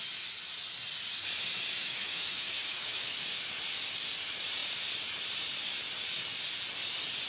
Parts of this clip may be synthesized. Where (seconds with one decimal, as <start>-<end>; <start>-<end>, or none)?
1.8-3.2